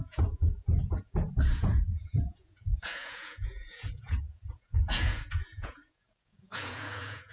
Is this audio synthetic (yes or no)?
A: yes